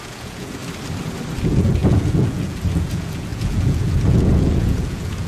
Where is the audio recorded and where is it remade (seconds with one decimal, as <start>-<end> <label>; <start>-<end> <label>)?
0.0-0.6 remade; 0.6-1.4 recorded; 1.4-5.3 remade